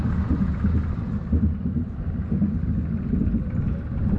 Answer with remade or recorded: recorded